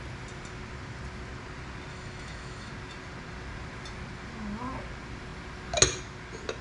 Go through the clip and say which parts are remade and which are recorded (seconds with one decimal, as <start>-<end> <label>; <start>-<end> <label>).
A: 0.0-1.9 recorded; 1.9-2.7 remade; 2.7-6.6 recorded

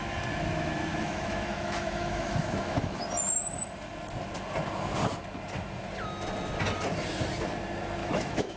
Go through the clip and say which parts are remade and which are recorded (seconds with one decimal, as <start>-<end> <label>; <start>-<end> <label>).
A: 0.0-0.9 recorded; 0.9-3.0 remade; 3.0-8.0 recorded; 8.0-8.6 remade

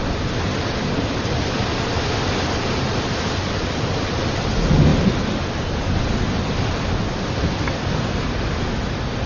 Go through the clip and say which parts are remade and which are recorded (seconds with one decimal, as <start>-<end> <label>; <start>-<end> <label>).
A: 0.0-9.3 recorded

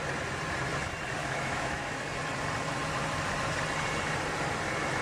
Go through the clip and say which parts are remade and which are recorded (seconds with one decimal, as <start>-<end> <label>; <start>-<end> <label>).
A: 0.0-1.2 recorded; 1.2-2.0 remade; 2.0-5.0 recorded

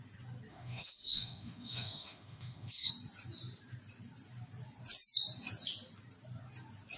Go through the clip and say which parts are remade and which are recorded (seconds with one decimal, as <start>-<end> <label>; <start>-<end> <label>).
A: 0.0-0.5 recorded; 0.5-2.9 remade; 2.9-7.0 recorded